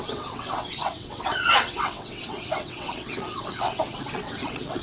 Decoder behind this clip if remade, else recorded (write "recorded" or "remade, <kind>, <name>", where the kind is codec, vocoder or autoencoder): remade, vocoder, WaveNeXt